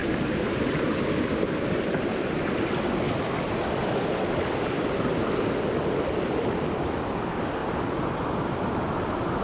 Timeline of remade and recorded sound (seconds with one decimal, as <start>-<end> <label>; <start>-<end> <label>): 0.0-0.9 remade; 0.9-7.6 recorded; 7.6-9.4 remade